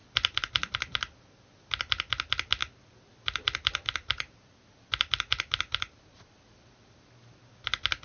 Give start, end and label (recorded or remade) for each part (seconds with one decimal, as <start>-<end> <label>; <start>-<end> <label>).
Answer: 0.0-0.7 remade; 0.7-2.6 recorded; 2.6-7.0 remade; 7.0-8.0 recorded